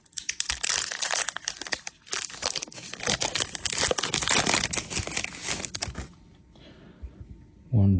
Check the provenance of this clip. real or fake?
real